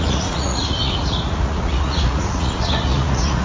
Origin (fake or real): fake